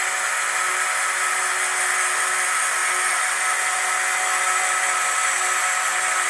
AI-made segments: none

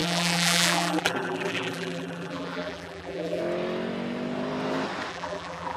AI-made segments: 0.0-3.4 (vocoder, BigVGAN v2); 5.1-5.8